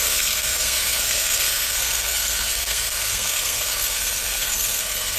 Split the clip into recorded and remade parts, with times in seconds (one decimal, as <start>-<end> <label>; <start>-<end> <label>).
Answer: 0.0-5.2 remade